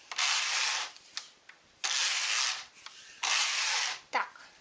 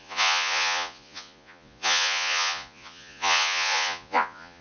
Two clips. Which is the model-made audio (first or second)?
second